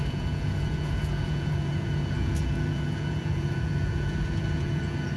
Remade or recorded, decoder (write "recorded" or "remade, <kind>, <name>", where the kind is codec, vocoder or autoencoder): remade, vocoder, Vocos